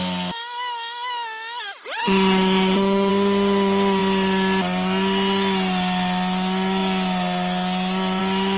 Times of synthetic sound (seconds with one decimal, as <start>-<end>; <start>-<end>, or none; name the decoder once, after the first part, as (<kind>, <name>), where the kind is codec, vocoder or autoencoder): 2.0-3.1 (autoencoder, DAC-VAE)

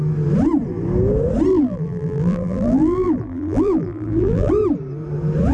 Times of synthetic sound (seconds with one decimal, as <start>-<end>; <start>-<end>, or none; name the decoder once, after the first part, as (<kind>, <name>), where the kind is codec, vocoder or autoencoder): 1.5-4.5 (vocoder, BigVGAN v2)

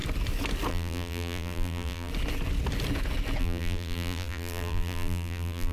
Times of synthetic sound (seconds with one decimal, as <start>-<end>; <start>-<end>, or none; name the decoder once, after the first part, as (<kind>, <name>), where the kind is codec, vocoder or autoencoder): 0.7-2.1 (vocoder, BigVGAN v2); 3.4-5.7

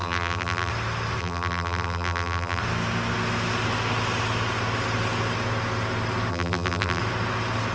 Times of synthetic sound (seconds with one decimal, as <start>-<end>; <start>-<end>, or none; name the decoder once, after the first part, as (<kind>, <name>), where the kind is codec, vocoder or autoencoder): 0.0-0.7 (vocoder, BigVGAN v2); 1.2-2.6; 6.3-7.0

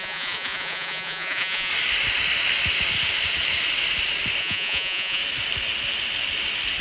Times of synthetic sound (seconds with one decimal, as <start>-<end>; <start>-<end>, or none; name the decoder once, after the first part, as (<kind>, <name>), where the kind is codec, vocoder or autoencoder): 0.0-1.7 (vocoder, Vocos); 4.4-5.2

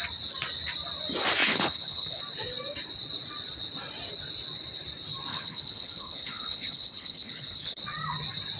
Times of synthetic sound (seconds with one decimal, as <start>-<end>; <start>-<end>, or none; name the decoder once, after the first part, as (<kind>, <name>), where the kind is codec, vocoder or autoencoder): 1.4-2.2 (codec, HILCodec); 5.3-7.8

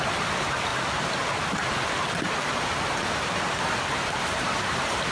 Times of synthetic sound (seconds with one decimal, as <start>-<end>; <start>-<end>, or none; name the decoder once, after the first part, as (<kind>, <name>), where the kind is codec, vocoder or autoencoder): none